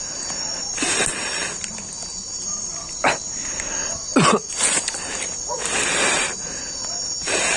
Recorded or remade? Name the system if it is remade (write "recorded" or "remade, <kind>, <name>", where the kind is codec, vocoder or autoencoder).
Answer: recorded